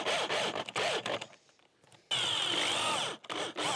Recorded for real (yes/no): yes